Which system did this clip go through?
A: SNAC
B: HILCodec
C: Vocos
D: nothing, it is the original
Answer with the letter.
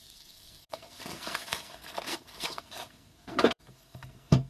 A